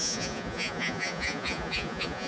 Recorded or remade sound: remade